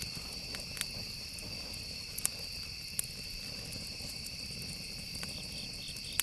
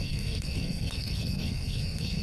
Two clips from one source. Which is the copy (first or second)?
second